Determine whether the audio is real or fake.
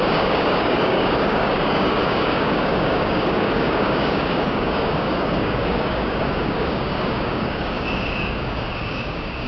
fake